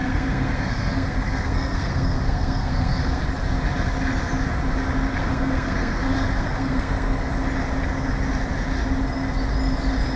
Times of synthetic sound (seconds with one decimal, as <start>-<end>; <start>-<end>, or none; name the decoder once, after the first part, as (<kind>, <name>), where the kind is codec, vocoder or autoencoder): 0.0-3.2 (codec, SNAC); 5.2-7.3